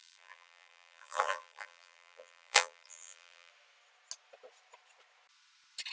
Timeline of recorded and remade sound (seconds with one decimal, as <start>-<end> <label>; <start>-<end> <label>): 0.0-3.5 remade; 3.5-5.9 recorded